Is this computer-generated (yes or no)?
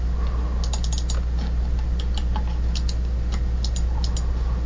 no